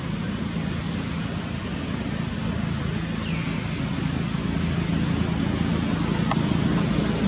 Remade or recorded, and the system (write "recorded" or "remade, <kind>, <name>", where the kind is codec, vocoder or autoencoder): recorded